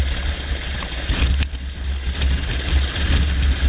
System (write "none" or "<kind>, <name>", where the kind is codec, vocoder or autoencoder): none